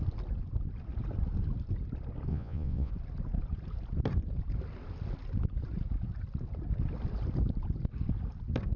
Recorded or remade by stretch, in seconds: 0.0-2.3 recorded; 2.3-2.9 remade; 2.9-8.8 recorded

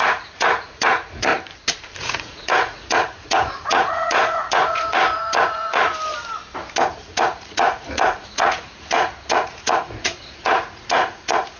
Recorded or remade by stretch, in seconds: 0.0-1.3 remade; 1.3-2.0 recorded; 2.0-5.9 remade; 5.9-6.9 recorded; 6.9-11.6 remade